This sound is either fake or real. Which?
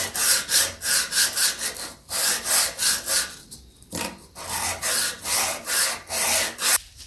real